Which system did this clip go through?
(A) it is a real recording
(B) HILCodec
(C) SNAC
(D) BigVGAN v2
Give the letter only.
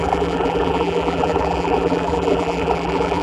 D